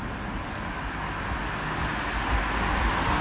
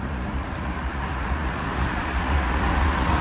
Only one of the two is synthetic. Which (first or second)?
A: second